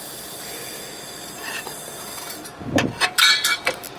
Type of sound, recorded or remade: remade